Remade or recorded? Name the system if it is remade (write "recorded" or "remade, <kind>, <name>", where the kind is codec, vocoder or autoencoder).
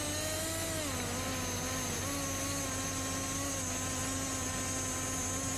recorded